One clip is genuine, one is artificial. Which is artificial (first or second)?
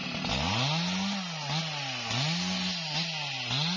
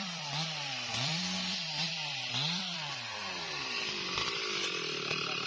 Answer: second